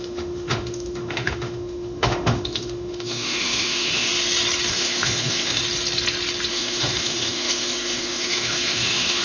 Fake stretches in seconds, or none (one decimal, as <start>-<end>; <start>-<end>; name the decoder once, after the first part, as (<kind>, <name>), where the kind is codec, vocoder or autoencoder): 0.0-4.1 (autoencoder, DAC-VAE); 4.7-5.6; 6.5-9.2